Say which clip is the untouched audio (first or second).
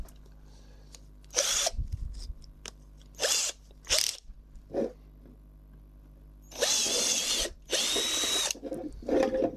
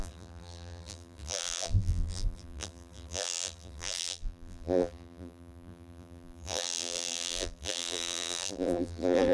first